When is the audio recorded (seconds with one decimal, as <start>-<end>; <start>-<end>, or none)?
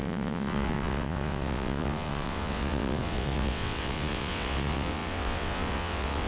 none